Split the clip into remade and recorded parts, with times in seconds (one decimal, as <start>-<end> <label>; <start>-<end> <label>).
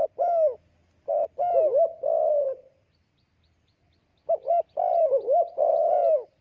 0.0-6.4 recorded